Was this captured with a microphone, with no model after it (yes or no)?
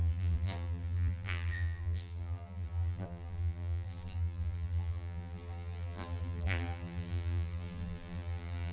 no